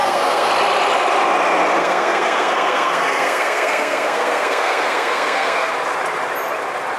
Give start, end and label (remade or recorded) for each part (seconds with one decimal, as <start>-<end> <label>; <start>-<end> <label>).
0.0-0.5 remade; 0.5-1.8 recorded; 1.8-5.7 remade; 5.7-7.0 recorded